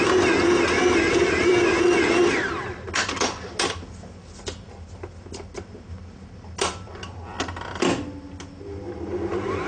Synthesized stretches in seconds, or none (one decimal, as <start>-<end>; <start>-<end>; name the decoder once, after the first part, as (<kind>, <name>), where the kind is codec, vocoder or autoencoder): none